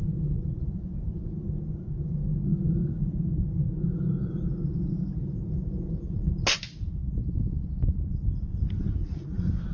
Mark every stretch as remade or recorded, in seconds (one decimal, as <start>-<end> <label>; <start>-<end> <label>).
0.0-9.7 recorded